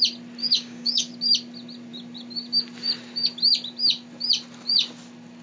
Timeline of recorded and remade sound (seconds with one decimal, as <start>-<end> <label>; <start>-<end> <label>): 0.0-0.4 recorded; 0.4-1.1 remade; 1.1-5.4 recorded